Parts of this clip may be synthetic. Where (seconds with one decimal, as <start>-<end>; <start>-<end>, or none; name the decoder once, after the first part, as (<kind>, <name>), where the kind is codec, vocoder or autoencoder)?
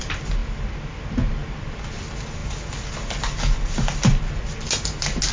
none